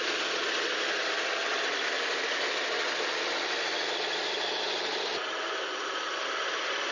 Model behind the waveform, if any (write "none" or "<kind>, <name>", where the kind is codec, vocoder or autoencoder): vocoder, BigVGAN v2